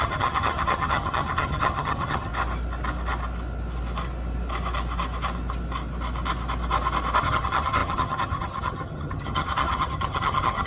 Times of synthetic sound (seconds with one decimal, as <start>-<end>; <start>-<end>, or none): 0.0-2.3; 7.2-10.7